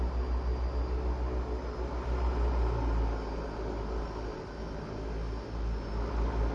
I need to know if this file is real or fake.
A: real